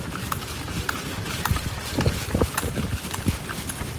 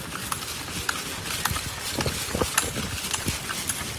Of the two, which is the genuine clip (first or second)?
second